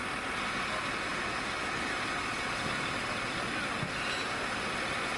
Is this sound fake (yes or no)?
no